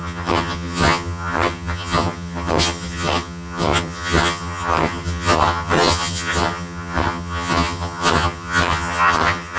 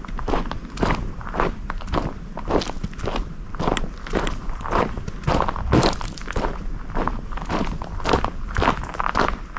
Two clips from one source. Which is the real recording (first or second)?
second